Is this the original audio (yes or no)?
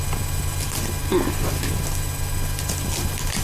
yes